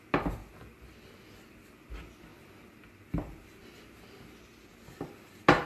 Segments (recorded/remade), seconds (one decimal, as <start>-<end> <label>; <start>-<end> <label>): 0.0-5.7 recorded